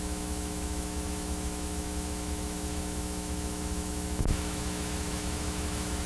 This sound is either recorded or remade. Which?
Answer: remade